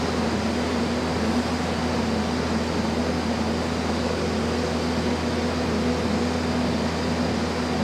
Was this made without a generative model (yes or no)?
yes